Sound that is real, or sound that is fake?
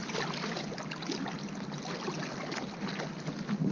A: real